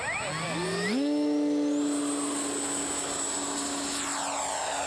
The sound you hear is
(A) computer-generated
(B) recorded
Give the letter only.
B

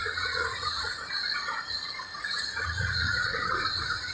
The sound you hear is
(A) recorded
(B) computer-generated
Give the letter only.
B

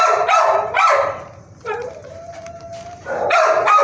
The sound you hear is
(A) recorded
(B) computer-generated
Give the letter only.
A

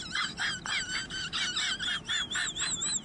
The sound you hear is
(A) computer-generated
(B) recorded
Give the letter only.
B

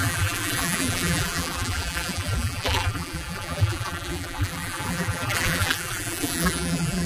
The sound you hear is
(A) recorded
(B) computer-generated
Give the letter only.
B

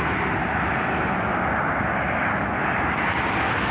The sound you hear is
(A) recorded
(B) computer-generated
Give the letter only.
A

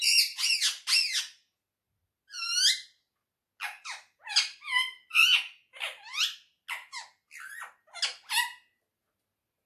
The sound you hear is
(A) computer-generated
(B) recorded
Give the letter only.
B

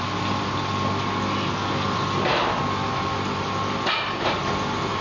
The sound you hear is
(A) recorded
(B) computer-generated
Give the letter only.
A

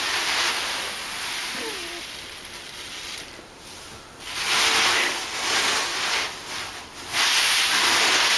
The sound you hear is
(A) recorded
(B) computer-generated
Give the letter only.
A